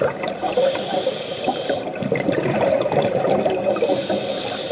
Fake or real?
fake